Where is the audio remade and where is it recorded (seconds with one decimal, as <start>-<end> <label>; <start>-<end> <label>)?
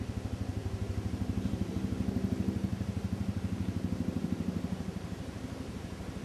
0.0-0.6 recorded; 0.6-1.7 remade; 1.7-2.7 recorded; 2.7-6.2 remade